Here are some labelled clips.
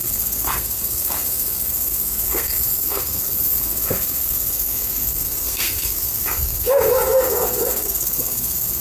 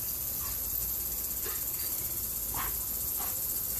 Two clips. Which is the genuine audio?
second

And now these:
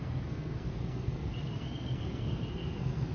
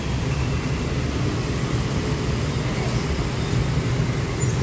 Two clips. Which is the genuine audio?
second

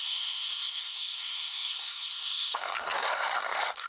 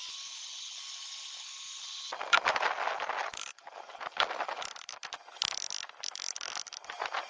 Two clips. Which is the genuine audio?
second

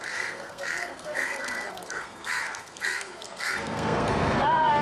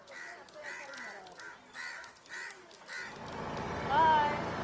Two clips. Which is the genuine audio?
second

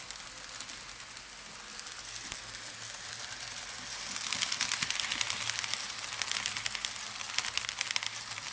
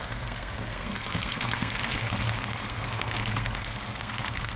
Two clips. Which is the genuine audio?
first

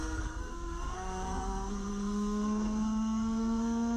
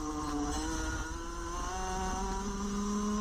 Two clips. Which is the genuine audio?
second